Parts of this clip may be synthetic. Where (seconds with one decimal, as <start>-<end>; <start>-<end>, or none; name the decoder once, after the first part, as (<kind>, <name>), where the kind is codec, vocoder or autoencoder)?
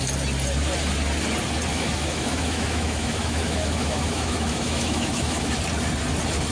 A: 1.7-5.6 (autoencoder, DAC-VAE)